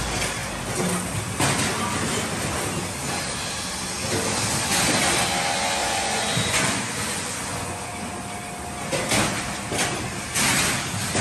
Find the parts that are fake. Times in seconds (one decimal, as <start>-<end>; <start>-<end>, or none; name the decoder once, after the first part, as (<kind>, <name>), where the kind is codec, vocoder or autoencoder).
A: 5.8-7.9 (vocoder, Vocos)